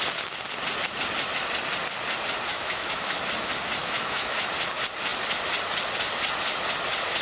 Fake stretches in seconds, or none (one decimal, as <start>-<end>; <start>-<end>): 2.5-3.2; 3.8-4.5